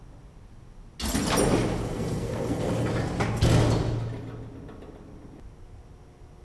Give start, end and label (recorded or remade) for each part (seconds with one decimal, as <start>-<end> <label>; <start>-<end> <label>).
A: 0.0-1.8 recorded; 1.8-2.9 remade; 2.9-6.4 recorded